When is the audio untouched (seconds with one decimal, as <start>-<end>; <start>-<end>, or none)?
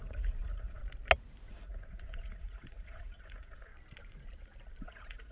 0.8-1.5; 3.7-4.8